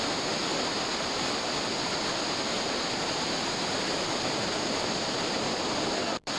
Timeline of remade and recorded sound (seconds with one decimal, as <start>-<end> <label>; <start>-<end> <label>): 0.0-0.5 remade; 0.5-1.2 recorded; 1.2-1.7 remade; 1.7-4.0 recorded; 4.0-6.4 remade